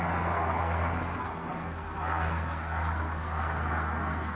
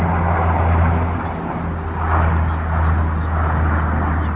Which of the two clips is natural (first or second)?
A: second